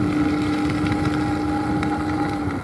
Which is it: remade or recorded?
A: recorded